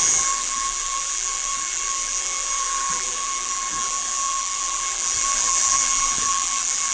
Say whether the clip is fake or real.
fake